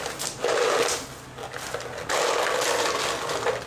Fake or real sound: real